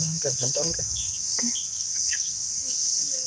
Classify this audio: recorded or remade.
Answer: remade